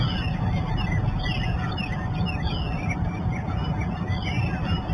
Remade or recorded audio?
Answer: recorded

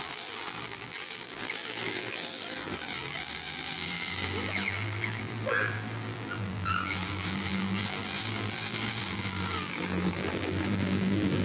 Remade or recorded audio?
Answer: remade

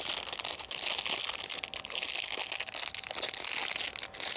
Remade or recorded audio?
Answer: recorded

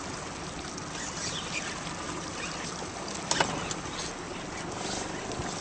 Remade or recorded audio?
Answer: recorded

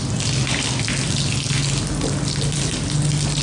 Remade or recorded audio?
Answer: recorded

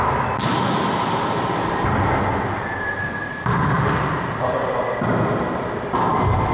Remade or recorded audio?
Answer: recorded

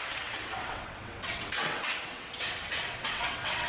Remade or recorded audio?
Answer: remade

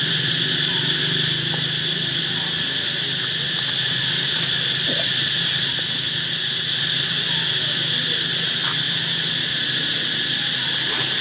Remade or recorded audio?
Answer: recorded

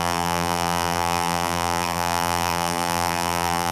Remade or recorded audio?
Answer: remade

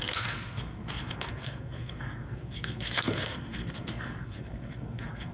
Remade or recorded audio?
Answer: remade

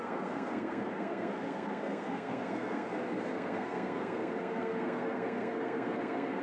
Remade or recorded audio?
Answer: remade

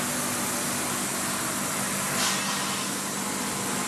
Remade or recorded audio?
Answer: recorded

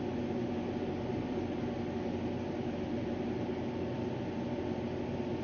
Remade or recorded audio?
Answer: recorded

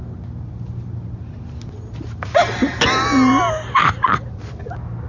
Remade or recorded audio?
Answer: recorded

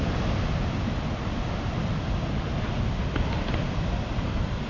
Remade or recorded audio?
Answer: recorded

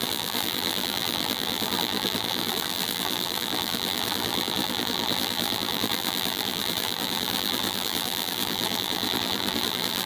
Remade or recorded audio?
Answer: remade